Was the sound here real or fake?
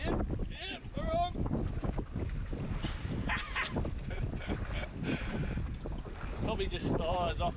real